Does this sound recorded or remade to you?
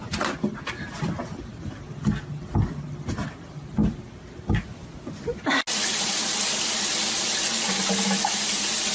recorded